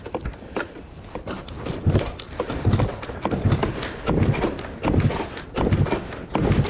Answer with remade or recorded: recorded